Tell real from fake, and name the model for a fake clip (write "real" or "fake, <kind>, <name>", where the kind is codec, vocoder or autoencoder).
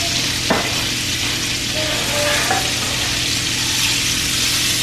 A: real